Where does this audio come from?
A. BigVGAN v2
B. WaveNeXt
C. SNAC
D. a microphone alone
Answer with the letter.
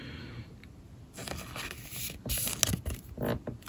D